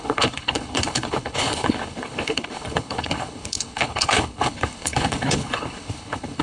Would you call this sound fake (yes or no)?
yes